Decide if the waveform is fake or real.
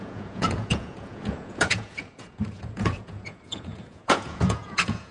fake